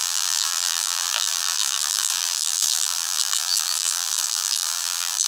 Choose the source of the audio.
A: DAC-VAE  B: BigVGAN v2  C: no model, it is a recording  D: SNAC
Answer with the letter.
B